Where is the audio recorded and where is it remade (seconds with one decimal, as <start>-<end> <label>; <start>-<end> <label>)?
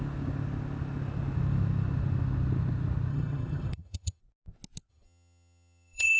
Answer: 0.0-3.1 recorded; 3.1-4.2 remade; 4.2-4.9 recorded; 4.9-6.2 remade